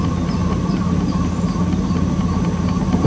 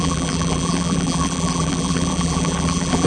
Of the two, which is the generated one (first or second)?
second